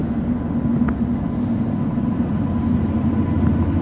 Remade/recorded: recorded